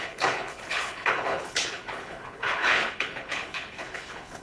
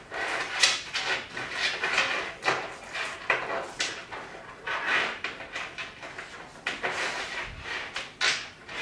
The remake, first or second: first